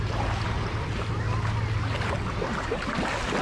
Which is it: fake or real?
real